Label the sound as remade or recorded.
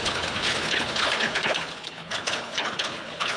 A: remade